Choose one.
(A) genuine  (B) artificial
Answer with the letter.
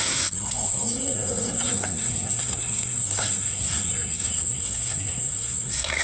B